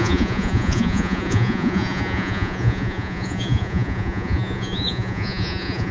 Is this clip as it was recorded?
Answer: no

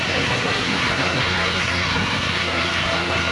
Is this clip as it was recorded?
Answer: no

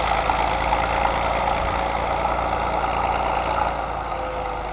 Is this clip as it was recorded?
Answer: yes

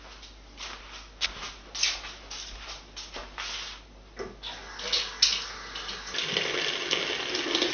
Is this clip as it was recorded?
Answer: yes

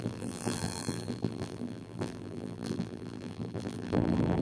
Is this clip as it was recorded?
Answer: no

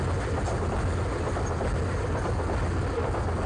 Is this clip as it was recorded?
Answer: yes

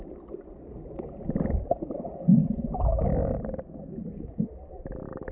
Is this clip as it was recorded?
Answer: yes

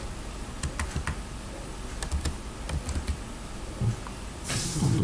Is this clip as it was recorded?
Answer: yes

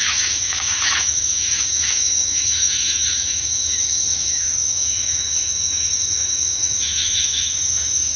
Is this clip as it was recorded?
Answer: no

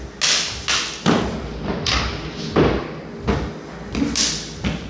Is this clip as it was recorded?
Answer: yes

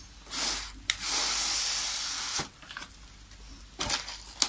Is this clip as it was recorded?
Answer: yes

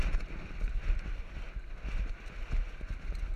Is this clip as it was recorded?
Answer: yes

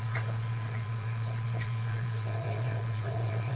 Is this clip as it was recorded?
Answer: no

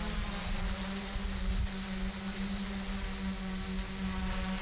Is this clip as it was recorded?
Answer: yes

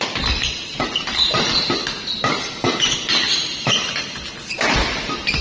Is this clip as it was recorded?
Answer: yes